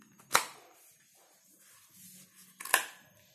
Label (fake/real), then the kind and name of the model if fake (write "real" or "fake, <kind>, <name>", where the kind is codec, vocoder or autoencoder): real